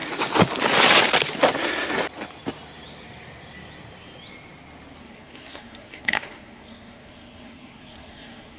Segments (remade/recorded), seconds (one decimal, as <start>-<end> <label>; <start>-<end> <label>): 0.0-5.0 recorded; 5.0-8.6 remade